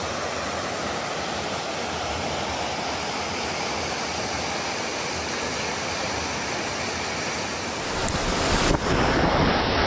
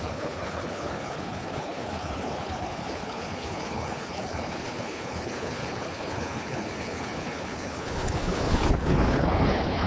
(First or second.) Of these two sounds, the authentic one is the first